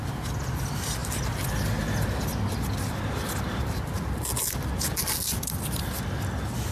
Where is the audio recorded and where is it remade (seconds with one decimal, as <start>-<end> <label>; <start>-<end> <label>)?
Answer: 0.0-6.7 recorded